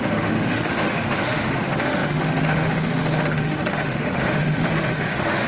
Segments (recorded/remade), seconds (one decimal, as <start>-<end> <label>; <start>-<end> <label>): 0.0-5.5 remade

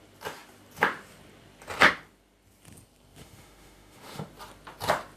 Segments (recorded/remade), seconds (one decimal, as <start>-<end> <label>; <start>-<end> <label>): 0.0-3.2 recorded; 3.2-4.3 remade; 4.3-5.2 recorded

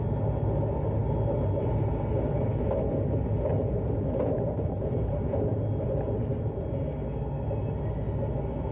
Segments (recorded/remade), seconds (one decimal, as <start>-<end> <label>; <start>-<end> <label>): 0.0-8.7 recorded

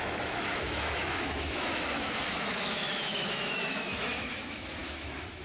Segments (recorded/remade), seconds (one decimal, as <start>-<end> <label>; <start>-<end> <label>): 0.0-5.4 remade

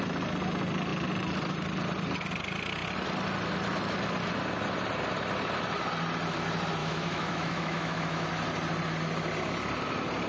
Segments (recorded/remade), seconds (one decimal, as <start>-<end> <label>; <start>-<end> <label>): 0.0-6.8 recorded; 6.8-8.3 remade; 8.3-10.3 recorded

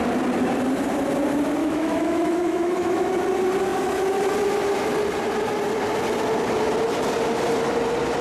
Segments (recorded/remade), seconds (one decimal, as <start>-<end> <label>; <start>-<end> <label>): 0.0-1.6 recorded; 1.6-3.1 remade; 3.1-8.2 recorded

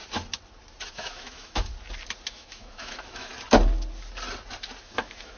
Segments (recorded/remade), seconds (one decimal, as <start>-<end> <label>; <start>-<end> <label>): 0.0-0.8 recorded; 0.8-1.7 remade; 1.7-2.3 recorded; 2.3-3.3 remade; 3.3-4.8 recorded; 4.8-5.4 remade